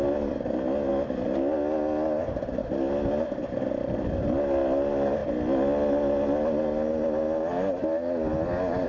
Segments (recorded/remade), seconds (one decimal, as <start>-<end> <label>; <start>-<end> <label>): 0.0-8.9 recorded